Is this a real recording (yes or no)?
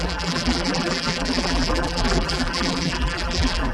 no